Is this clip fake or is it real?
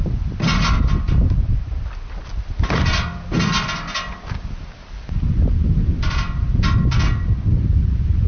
real